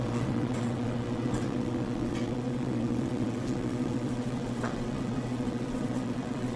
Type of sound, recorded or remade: remade